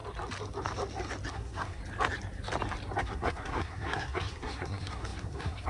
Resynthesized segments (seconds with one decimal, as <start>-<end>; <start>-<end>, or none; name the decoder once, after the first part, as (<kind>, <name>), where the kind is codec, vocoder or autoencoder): 1.3-1.8 (codec, SNAC); 3.0-5.7

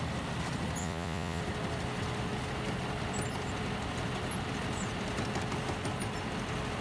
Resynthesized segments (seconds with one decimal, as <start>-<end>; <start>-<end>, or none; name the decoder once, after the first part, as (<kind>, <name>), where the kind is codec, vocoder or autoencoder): 0.8-1.4 (vocoder, Vocos)

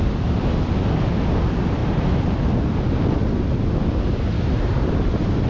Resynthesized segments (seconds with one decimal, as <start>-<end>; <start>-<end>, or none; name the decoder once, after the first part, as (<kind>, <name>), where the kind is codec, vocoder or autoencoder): none

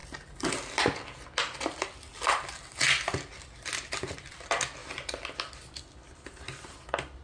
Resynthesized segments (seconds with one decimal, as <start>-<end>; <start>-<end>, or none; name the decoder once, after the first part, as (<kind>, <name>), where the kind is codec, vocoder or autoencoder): none

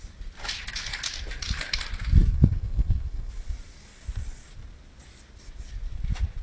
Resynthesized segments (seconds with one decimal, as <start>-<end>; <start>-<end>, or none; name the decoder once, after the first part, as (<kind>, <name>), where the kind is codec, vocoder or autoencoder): 2.2-3.3 (codec, SNAC)

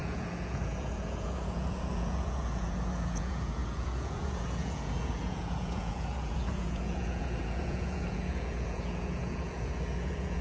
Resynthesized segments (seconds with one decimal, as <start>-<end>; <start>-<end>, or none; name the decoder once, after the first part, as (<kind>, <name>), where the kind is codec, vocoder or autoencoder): 0.0-10.4 (vocoder, Vocos)